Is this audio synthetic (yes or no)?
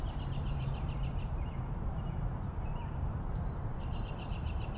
yes